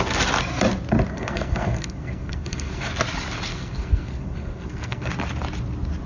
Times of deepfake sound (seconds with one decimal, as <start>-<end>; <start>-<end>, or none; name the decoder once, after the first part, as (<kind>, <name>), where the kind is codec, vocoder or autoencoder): 1.1-2.9 (codec, SNAC); 3.5-5.1